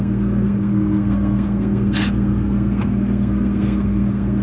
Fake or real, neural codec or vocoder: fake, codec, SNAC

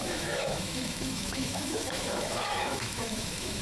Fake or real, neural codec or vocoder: fake, autoencoder, DAC-VAE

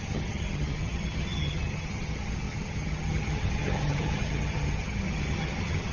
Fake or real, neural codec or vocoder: fake, vocoder, HiFi-GAN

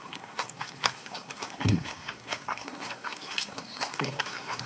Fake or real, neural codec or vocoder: fake, codec, SNAC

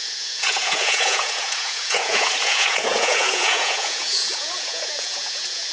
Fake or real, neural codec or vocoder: fake, vocoder, Vocos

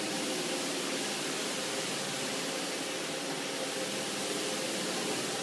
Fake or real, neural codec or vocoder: real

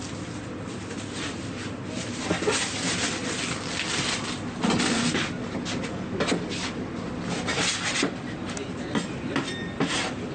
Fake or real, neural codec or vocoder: real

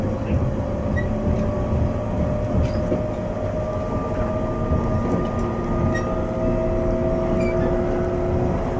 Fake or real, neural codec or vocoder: real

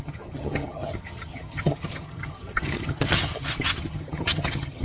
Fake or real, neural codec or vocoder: fake, vocoder, HiFi-GAN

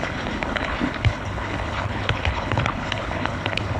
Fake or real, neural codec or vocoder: fake, codec, HILCodec